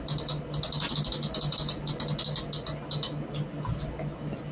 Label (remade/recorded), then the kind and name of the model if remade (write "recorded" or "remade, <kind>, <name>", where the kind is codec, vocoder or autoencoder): recorded